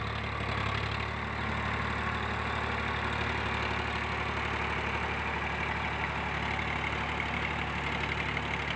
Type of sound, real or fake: real